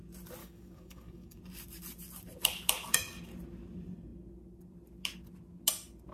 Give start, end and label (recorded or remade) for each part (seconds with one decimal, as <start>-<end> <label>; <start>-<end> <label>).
0.0-0.4 recorded; 0.4-1.4 remade; 1.4-6.1 recorded